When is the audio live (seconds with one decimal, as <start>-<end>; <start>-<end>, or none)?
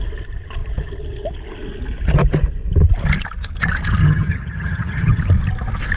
0.0-4.0; 5.2-6.0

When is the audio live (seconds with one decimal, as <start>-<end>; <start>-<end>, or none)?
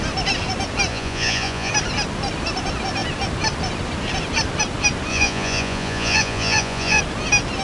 0.0-0.9; 1.7-5.1; 7.0-7.6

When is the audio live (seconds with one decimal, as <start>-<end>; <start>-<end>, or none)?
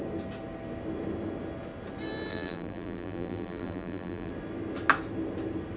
0.0-2.3; 4.3-5.8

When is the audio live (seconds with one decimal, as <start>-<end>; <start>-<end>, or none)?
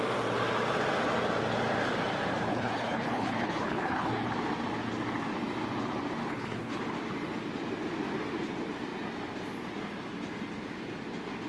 0.0-2.5; 4.3-6.2; 6.8-11.5